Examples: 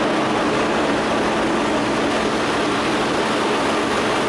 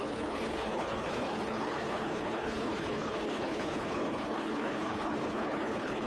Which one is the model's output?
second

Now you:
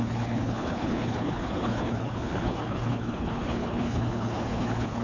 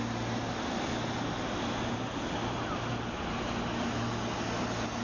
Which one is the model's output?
first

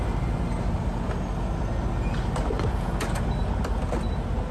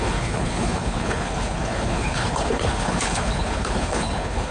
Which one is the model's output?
second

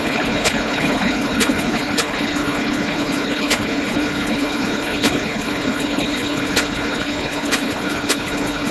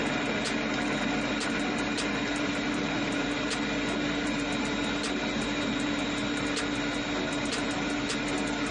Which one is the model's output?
first